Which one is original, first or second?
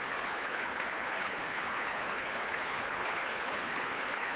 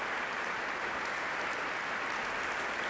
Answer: second